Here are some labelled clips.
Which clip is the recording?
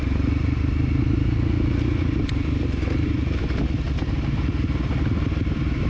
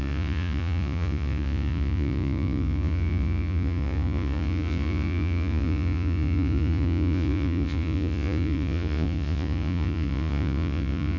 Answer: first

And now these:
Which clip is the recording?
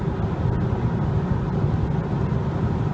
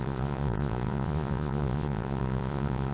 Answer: first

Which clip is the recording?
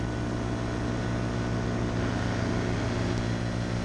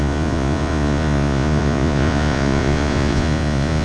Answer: first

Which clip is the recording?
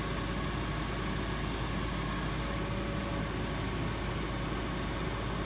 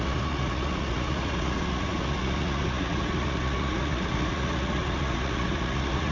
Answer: first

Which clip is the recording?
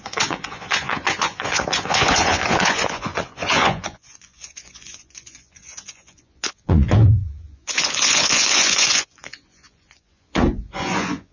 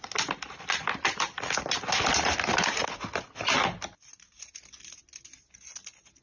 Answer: second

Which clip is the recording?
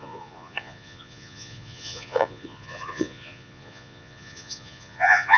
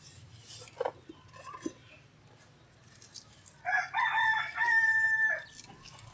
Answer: second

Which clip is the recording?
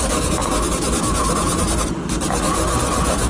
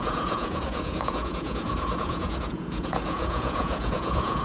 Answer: first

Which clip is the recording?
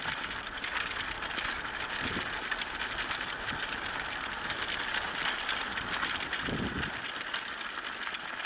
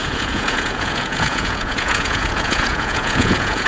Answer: first